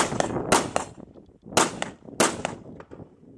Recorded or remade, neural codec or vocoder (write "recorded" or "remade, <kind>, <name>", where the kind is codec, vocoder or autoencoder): recorded